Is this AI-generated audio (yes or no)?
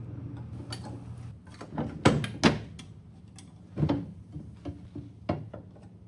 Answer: no